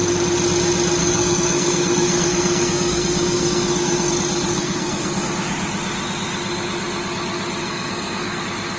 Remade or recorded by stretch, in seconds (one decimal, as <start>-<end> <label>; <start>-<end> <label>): 0.0-1.0 recorded; 1.0-4.1 remade; 4.1-4.5 recorded; 4.5-5.3 remade; 5.3-7.6 recorded; 7.6-8.4 remade; 8.4-8.8 recorded